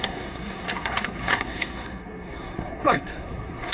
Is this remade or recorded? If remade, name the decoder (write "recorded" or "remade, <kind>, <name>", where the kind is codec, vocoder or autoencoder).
remade, codec, SNAC